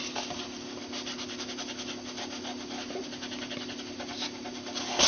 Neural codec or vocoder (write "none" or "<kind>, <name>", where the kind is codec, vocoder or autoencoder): none